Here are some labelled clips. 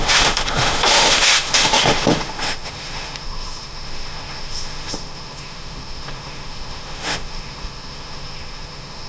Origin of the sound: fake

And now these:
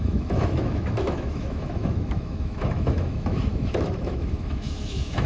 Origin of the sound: fake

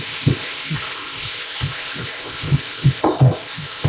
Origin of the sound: fake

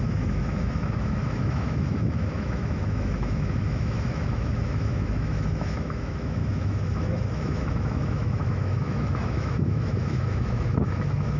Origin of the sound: fake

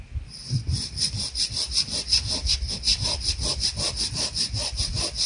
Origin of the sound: fake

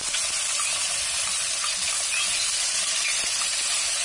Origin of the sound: real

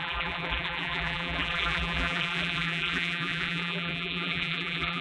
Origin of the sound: fake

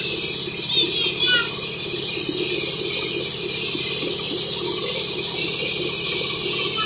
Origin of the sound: real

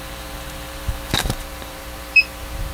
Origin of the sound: fake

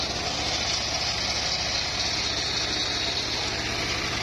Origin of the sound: real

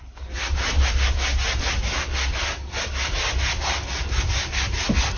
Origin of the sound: real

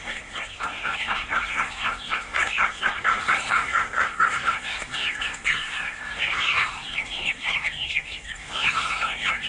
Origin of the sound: fake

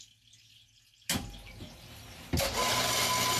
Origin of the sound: real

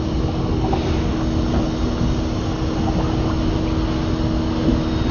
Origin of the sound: real